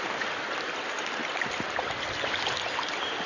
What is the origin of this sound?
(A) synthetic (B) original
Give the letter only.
B